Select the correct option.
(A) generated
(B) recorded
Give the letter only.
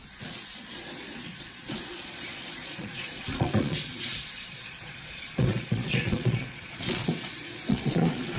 A